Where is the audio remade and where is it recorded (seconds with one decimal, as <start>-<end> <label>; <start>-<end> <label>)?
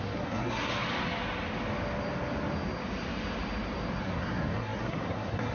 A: 0.0-0.7 remade; 0.7-4.0 recorded; 4.0-5.5 remade